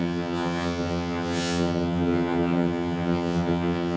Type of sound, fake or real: fake